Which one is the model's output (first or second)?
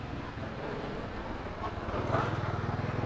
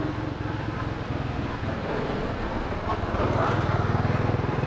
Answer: second